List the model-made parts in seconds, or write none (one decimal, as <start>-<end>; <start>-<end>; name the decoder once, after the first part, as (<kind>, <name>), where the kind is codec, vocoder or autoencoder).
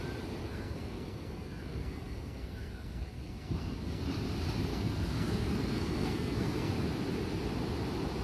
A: 0.4-4.0 (codec, SNAC); 4.7-6.7